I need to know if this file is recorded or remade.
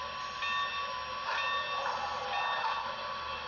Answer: recorded